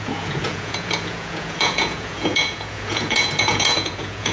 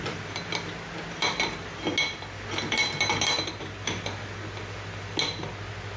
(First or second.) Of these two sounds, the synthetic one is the first